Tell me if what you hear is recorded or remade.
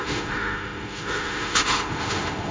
remade